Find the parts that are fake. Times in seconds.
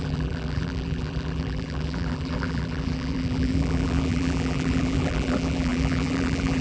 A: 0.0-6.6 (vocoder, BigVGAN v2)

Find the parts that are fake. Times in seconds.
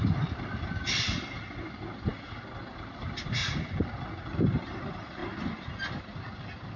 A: 0.0-2.1 (vocoder, BigVGAN v2); 2.9-3.4; 4.3-5.2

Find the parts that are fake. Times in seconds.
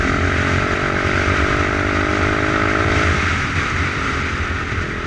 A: 0.0-2.1 (vocoder, BigVGAN v2); 2.8-5.1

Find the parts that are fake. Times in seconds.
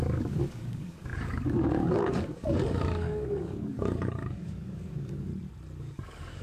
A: 0.0-5.3 (codec, DAC); 5.8-6.4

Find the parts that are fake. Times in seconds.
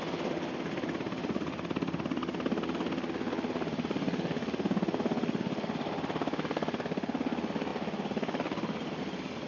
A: none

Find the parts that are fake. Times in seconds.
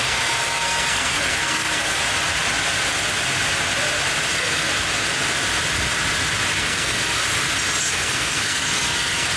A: 0.0-2.0 (codec, SNAC); 4.3-4.7; 6.6-7.2; 7.8-9.4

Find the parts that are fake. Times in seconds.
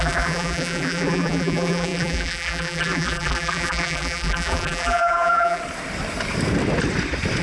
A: 0.0-5.6 (vocoder, BigVGAN v2)